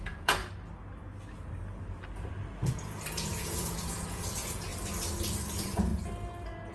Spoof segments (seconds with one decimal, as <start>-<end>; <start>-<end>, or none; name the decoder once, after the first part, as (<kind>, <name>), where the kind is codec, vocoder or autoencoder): 0.0-0.4 (vocoder, Vocos); 2.7-4.7; 5.5-5.9